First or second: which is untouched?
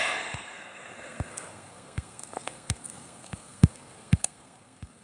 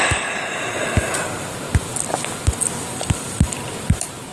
second